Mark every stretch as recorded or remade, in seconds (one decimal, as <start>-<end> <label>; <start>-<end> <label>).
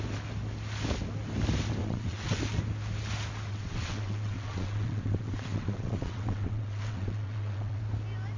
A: 0.0-1.8 recorded; 1.8-2.4 remade; 2.4-3.5 recorded; 3.5-7.8 remade; 7.8-8.4 recorded